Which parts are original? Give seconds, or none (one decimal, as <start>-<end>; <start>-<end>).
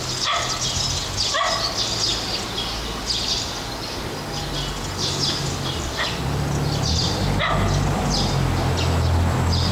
0.0-9.7